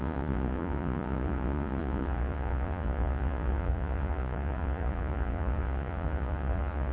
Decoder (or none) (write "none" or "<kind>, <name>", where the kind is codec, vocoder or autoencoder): vocoder, Vocos